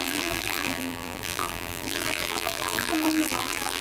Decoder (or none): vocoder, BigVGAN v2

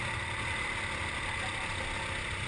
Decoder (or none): none